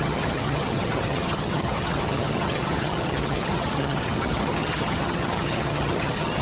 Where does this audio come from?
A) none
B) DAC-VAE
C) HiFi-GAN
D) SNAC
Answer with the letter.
C